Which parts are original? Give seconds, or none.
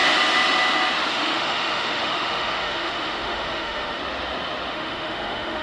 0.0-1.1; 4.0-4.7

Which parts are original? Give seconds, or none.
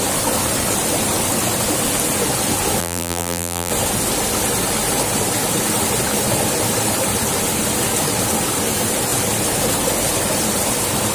0.0-2.8; 3.7-11.1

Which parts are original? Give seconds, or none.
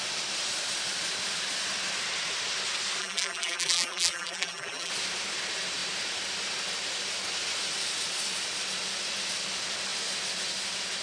0.0-3.0; 4.9-11.0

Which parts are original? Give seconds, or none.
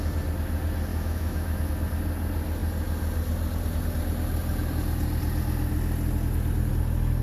0.0-0.9; 1.7-7.2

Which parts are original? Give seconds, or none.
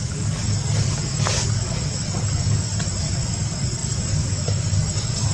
2.7-3.3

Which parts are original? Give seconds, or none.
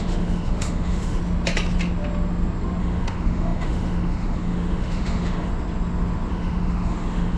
1.2-2.8; 5.5-6.3